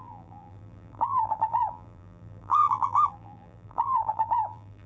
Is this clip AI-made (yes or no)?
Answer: yes